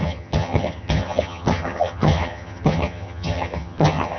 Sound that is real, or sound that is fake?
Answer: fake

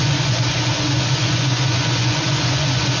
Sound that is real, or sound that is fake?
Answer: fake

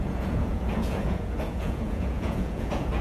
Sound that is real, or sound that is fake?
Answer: fake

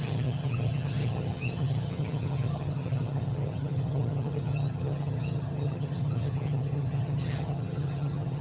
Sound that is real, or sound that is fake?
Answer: fake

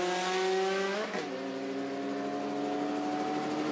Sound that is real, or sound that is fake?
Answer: real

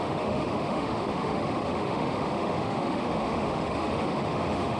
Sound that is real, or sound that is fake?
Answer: fake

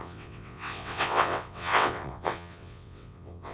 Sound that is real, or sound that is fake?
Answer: fake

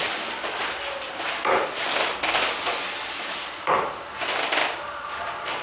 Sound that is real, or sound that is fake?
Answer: real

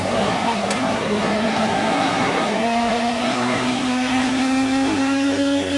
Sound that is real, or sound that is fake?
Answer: fake